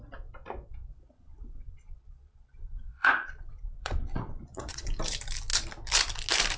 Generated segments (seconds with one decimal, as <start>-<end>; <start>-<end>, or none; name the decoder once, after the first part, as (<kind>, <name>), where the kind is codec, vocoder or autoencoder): 0.9-4.9 (vocoder, Vocos)